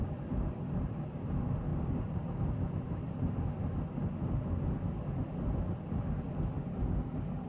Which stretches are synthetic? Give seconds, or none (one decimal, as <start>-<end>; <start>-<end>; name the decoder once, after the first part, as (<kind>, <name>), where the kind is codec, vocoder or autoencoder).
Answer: 1.7-3.0 (vocoder, BigVGAN v2)